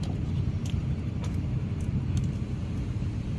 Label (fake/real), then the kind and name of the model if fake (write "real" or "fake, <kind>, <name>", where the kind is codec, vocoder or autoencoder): fake, vocoder, BigVGAN v2